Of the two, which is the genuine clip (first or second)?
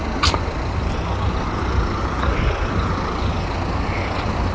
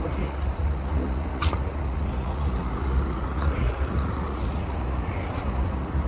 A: first